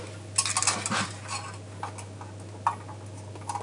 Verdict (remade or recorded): recorded